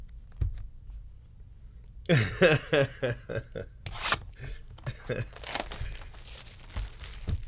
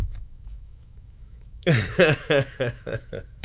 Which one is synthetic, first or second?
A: second